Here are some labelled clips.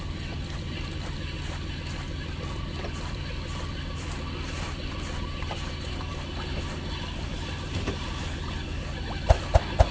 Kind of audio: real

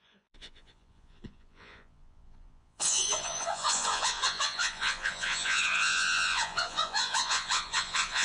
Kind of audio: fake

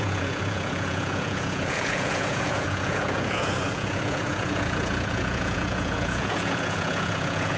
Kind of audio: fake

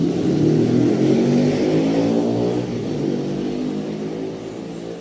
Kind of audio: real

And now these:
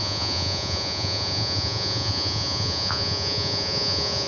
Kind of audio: fake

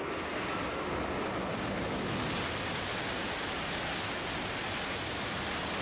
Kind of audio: real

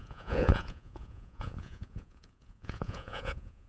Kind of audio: fake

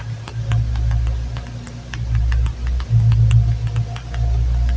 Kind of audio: real